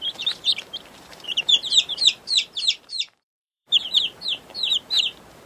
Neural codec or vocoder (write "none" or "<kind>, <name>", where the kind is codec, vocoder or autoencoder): vocoder, BigVGAN v2